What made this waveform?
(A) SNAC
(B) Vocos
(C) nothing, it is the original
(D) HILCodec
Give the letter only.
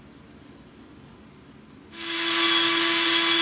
C